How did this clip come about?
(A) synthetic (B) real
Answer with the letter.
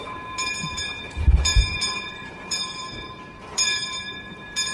A